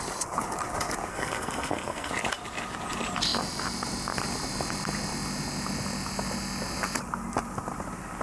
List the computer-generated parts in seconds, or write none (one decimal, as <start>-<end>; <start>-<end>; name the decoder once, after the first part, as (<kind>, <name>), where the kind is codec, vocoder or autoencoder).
1.1-2.1 (codec, SNAC)